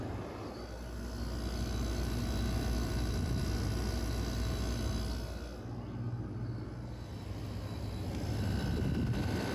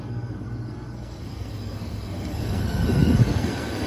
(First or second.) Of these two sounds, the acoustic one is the first